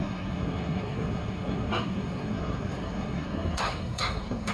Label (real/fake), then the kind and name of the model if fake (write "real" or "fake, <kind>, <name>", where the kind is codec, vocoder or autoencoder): fake, codec, SNAC